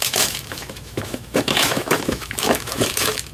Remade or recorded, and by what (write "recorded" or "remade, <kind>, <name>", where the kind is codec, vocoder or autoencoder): remade, autoencoder, DAC-VAE